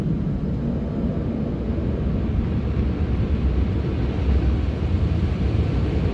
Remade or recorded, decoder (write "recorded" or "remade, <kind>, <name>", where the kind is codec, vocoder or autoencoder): recorded